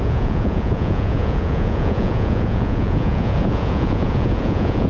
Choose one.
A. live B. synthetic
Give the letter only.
B